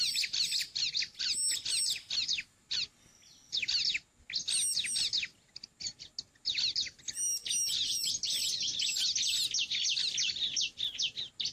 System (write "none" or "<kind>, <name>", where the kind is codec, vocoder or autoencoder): none